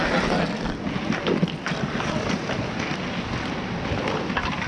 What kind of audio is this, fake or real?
real